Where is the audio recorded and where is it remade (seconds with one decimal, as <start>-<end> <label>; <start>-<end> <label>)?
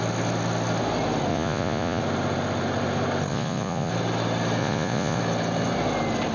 0.0-1.3 recorded; 1.3-2.0 remade; 2.0-3.3 recorded; 3.3-3.9 remade; 3.9-4.6 recorded; 4.6-5.2 remade; 5.2-6.3 recorded